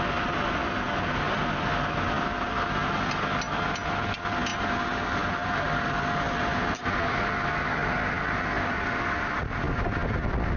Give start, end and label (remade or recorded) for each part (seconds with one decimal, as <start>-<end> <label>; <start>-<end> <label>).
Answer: 0.0-10.6 recorded